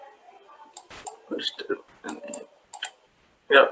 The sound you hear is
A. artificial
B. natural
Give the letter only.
A